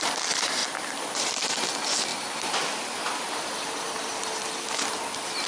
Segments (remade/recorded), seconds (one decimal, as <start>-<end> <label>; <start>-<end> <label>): 0.0-0.6 recorded; 0.6-1.6 remade; 1.6-2.1 recorded; 2.1-5.5 remade